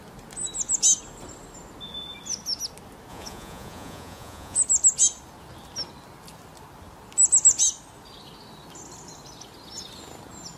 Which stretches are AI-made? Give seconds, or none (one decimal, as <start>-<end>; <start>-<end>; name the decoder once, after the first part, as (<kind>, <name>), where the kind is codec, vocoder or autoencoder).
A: 3.1-4.6 (vocoder, Vocos)